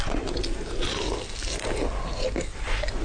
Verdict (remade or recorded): recorded